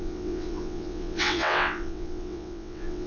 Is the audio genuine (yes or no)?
no